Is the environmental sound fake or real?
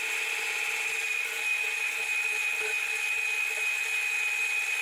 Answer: real